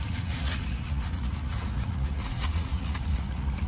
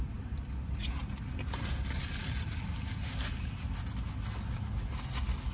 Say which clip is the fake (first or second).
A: first